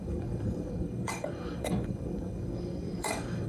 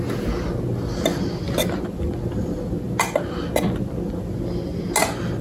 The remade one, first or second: first